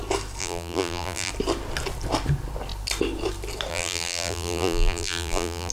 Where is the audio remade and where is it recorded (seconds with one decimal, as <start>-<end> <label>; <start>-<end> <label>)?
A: 0.0-0.4 recorded; 0.4-1.3 remade; 1.3-3.7 recorded; 3.7-5.7 remade